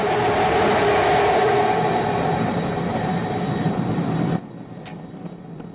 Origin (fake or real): real